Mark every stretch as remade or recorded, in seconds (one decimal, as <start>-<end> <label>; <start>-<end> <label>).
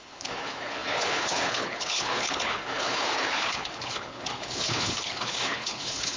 0.0-6.2 remade